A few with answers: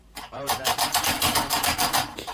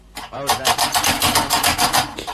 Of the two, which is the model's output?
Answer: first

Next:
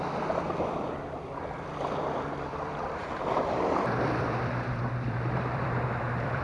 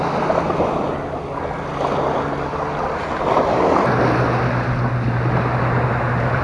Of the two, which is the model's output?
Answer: first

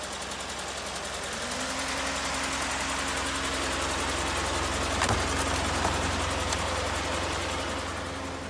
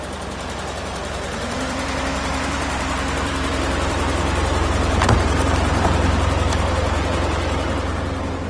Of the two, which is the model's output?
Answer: second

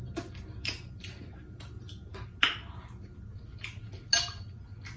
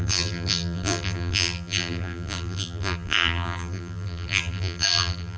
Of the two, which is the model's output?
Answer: second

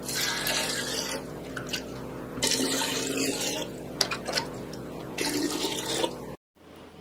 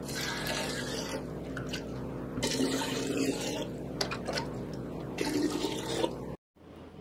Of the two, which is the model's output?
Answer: second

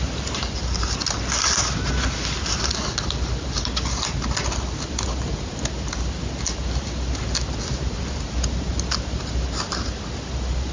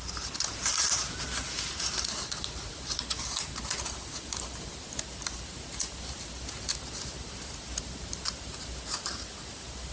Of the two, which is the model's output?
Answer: second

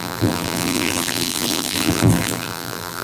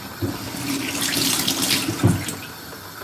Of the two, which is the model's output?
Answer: first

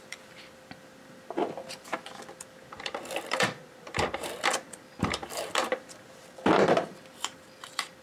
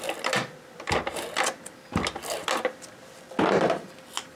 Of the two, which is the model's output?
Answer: first